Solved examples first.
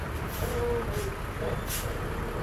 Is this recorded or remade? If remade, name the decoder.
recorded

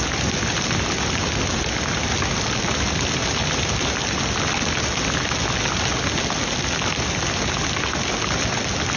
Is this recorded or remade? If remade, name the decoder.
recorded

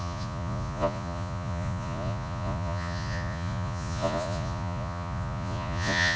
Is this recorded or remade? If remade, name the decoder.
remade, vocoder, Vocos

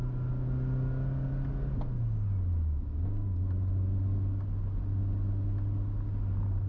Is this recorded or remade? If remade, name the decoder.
recorded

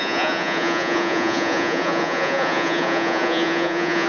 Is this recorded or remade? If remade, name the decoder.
remade, vocoder, Vocos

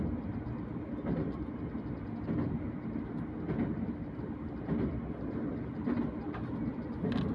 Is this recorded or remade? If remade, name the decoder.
recorded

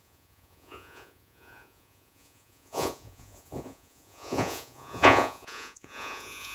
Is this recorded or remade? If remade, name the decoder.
remade, vocoder, Vocos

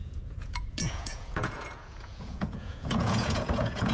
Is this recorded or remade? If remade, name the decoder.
remade, vocoder, Vocos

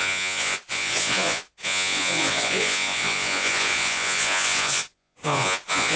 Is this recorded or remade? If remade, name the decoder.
remade, vocoder, Vocos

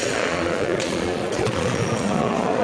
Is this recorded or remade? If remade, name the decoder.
remade, vocoder, Vocos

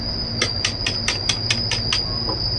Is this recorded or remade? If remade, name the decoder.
recorded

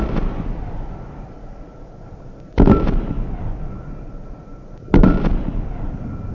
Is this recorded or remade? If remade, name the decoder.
recorded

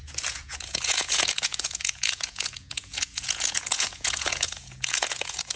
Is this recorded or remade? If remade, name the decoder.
remade, vocoder, Vocos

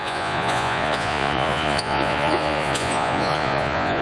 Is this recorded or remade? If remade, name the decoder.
remade, vocoder, Vocos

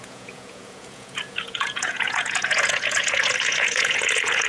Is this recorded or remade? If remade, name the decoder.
remade, vocoder, Vocos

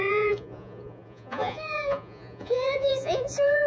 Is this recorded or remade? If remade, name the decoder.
remade, vocoder, Vocos